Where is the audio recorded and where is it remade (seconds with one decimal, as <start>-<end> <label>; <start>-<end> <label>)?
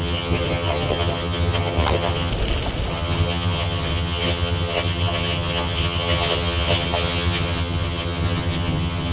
0.0-2.3 remade; 2.3-2.9 recorded; 2.9-9.1 remade